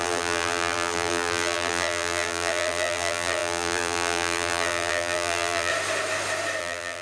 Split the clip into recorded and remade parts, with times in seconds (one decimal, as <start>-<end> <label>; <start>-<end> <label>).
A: 0.0-5.7 remade; 5.7-6.6 recorded; 6.6-7.0 remade